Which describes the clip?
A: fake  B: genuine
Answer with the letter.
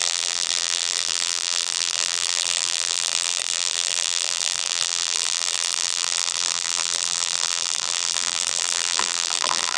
A